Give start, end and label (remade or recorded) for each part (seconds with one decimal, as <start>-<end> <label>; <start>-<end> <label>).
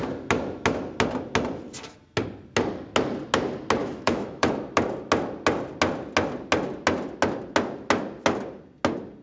0.0-3.8 recorded; 3.8-4.5 remade; 4.5-9.2 recorded